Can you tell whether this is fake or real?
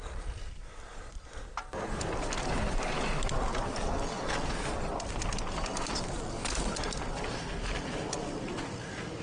real